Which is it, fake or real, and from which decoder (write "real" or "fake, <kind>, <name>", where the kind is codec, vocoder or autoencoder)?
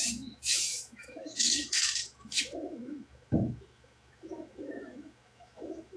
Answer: fake, autoencoder, DAC-VAE